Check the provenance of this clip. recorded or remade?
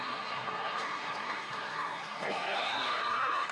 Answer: remade